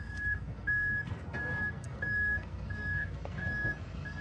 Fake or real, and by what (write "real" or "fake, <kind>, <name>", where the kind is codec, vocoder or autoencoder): fake, codec, SNAC